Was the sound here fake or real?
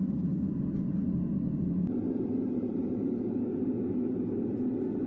real